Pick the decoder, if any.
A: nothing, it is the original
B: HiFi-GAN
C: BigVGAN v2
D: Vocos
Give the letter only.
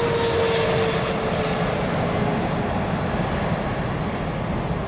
A